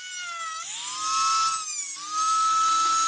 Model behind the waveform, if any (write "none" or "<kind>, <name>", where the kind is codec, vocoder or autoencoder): none